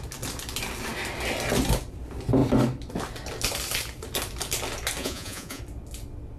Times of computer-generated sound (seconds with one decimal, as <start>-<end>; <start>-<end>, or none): 5.0-5.6

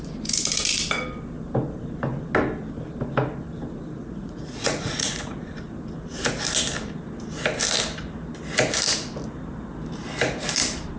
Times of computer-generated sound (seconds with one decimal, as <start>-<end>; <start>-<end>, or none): 4.0-5.4

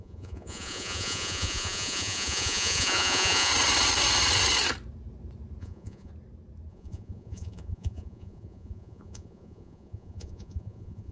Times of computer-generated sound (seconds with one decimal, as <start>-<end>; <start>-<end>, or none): 0.0-3.5; 5.6-6.1; 6.7-11.1

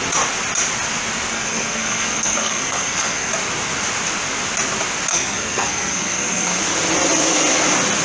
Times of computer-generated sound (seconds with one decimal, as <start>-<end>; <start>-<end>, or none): 1.3-3.3; 5.1-6.6